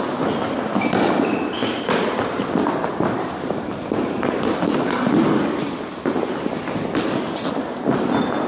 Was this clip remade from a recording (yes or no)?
no